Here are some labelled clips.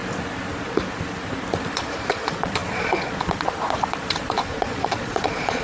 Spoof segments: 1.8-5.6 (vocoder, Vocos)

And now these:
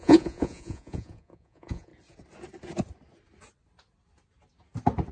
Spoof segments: 0.0-1.9 (vocoder, Vocos)

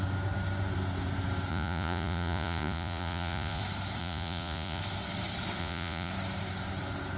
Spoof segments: 1.5-3.6 (vocoder, Vocos); 4.0-4.8; 5.6-6.1

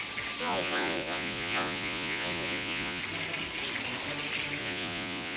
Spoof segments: 0.4-3.0 (vocoder, Vocos); 4.6-5.4

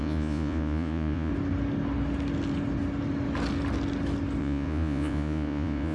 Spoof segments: 0.0-1.3 (vocoder, Vocos); 4.4-5.9

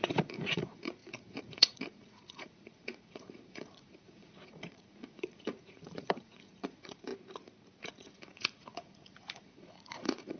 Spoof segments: 0.0-7.1 (vocoder, Vocos); 7.8-10.4